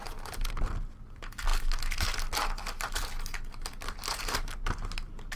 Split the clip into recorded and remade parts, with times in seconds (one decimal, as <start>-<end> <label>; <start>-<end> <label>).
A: 0.0-5.4 recorded